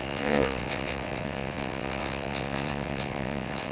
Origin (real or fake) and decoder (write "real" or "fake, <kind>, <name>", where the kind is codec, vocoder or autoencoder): fake, vocoder, WaveNeXt